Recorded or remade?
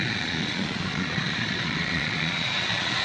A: remade